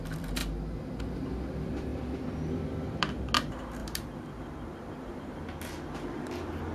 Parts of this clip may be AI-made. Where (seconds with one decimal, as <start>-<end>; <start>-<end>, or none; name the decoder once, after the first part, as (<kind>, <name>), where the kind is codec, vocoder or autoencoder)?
1.9-3.1 (vocoder, BigVGAN v2); 3.8-5.1